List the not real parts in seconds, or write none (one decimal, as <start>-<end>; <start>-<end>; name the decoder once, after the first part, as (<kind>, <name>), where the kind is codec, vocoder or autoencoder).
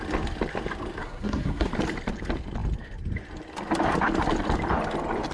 1.0-1.7 (codec, SNAC)